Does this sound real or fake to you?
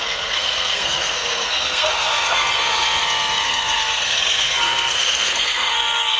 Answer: fake